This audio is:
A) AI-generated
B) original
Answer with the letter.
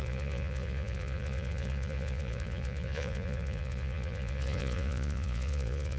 A